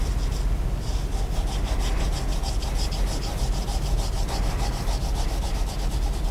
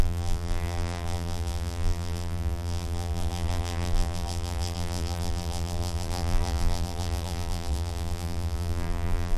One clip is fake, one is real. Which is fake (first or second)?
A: second